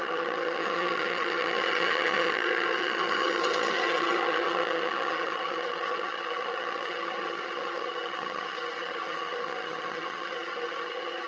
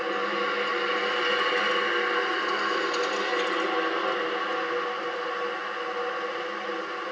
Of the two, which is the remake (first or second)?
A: first